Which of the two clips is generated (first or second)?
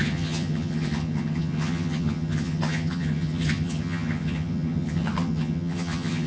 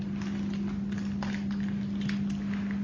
first